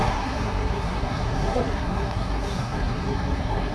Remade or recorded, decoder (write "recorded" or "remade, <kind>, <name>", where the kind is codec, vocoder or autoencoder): remade, codec, SNAC